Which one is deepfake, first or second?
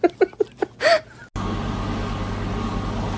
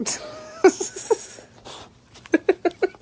second